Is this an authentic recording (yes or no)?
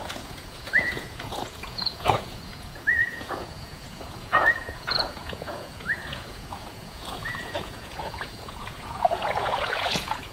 no